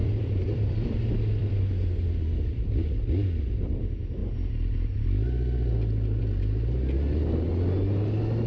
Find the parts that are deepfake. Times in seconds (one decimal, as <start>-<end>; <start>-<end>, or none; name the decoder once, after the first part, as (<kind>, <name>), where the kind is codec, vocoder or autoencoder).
0.0-1.6 (vocoder, BigVGAN v2)